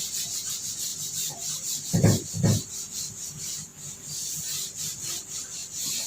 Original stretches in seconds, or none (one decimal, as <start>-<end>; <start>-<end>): 0.0-6.1